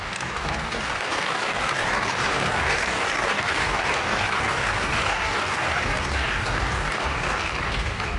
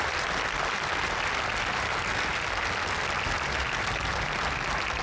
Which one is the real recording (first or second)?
second